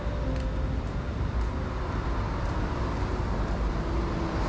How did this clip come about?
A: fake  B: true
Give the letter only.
B